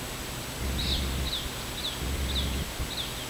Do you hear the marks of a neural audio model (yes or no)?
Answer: no